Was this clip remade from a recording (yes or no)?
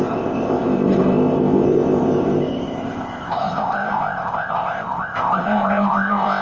yes